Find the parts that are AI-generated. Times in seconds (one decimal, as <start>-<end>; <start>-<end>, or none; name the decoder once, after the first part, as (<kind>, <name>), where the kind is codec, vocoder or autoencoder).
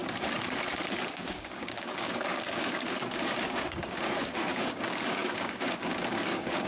1.1-6.7 (codec, DAC)